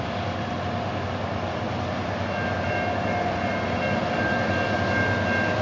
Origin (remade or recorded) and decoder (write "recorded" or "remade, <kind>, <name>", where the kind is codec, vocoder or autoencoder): recorded